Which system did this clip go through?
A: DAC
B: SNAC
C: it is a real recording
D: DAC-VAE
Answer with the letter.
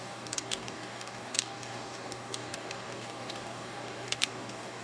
A